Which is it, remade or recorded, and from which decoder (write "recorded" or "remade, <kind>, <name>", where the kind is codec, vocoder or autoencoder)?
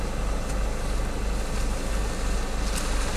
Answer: recorded